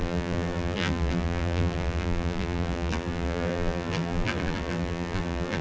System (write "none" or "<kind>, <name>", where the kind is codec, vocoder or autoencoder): vocoder, BigVGAN v2